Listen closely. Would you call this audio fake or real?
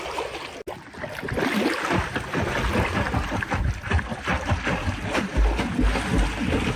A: real